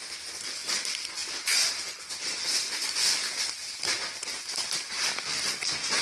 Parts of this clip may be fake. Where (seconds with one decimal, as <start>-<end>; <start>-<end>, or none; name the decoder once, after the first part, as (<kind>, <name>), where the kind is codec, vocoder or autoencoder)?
none

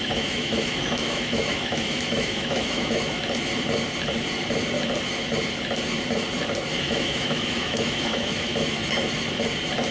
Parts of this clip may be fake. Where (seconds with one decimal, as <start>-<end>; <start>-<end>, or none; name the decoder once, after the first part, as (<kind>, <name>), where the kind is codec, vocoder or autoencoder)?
0.0-3.2 (autoencoder, DAC-VAE); 6.8-8.8

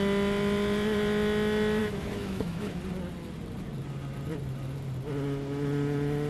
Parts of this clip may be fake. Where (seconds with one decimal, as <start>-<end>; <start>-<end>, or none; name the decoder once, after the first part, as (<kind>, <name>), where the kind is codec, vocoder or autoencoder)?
1.8-2.8 (autoencoder, DAC-VAE)

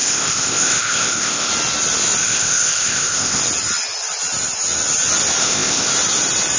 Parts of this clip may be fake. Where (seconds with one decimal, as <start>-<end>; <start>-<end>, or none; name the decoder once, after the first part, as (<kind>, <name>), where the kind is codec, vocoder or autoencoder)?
0.0-1.5 (codec, ZipCodec); 2.2-3.4; 5.4-5.9

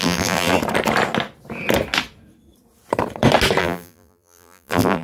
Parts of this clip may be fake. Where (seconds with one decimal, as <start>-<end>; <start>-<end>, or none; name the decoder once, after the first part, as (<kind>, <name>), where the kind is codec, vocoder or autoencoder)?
0.0-0.6 (vocoder, BigVGAN v2); 3.6-5.0